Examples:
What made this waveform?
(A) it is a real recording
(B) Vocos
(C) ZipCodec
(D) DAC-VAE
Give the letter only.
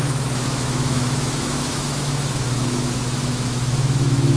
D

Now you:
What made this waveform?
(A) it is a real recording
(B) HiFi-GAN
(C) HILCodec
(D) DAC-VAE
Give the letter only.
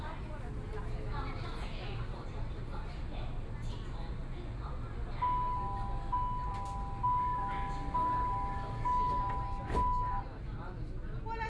A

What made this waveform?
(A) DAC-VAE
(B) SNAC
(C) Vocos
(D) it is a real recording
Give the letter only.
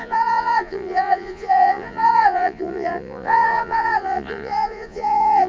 C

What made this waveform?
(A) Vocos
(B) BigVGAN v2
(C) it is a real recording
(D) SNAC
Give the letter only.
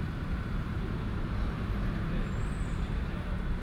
B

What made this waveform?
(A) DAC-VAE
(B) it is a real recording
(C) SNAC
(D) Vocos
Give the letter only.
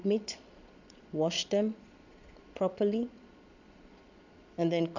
D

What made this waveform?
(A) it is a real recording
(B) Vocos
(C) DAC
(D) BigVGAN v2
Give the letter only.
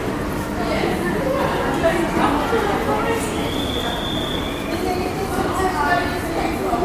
A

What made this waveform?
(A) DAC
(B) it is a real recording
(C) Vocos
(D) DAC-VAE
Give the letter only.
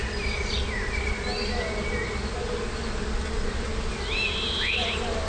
B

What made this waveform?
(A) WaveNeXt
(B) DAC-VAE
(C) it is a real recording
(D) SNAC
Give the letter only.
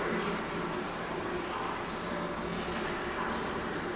C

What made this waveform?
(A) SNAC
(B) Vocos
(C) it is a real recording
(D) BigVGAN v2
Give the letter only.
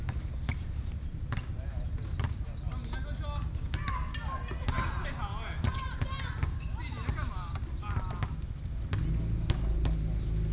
C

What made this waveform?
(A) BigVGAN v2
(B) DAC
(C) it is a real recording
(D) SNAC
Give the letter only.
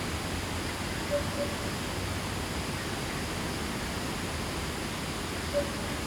C